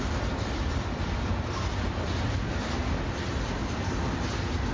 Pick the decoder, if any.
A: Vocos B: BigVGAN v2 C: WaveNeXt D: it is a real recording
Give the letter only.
D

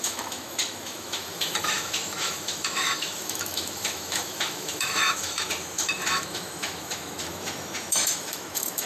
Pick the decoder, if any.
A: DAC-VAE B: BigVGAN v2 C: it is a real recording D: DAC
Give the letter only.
A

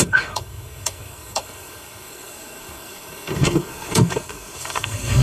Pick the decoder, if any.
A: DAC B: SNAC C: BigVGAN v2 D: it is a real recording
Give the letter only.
B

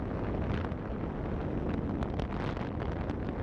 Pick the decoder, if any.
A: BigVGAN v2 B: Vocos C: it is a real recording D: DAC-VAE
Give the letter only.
C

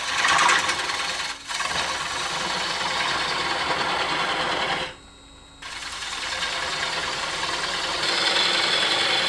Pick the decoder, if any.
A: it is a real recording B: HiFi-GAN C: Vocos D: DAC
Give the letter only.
A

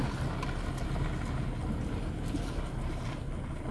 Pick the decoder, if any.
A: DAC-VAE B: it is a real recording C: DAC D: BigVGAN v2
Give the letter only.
B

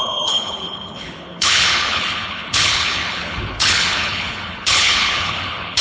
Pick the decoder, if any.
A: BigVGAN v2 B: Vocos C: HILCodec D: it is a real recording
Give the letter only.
C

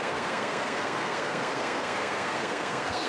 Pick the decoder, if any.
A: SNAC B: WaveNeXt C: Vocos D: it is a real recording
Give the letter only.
A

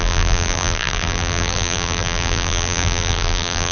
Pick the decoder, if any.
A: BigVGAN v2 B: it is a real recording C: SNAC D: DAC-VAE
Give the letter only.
A